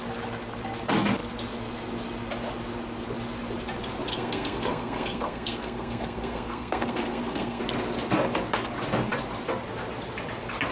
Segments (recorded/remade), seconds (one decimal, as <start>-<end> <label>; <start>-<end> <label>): 0.0-4.1 recorded; 4.1-7.6 remade; 7.6-10.7 recorded